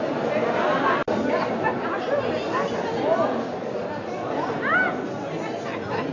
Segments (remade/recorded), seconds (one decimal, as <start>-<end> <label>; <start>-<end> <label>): 0.0-6.1 recorded